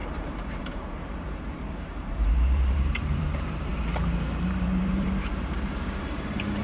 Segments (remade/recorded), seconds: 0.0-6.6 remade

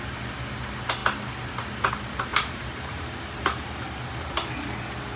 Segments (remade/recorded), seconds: 0.0-2.3 recorded; 2.3-4.1 remade; 4.1-5.2 recorded

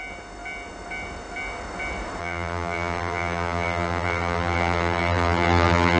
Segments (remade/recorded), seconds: 0.0-2.2 recorded; 2.2-6.0 remade

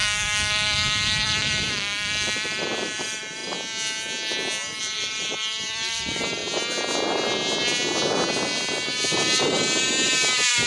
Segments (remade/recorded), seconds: 0.0-3.4 remade; 3.4-4.8 recorded; 4.8-6.4 remade; 6.4-8.3 recorded; 8.3-10.7 remade

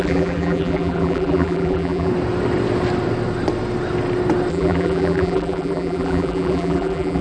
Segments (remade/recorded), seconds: 0.0-2.1 remade; 2.1-4.5 recorded; 4.5-7.2 remade

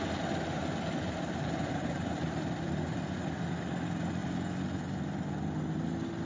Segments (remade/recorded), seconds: 0.0-0.5 recorded; 0.5-2.4 remade; 2.4-6.3 recorded

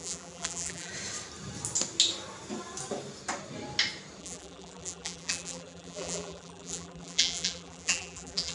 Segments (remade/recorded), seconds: 0.0-0.9 remade; 0.9-4.2 recorded; 4.2-8.5 remade